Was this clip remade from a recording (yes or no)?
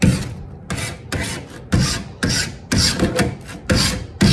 no